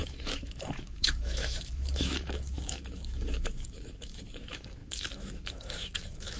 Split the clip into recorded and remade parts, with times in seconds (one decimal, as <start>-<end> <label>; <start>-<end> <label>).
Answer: 0.0-6.4 remade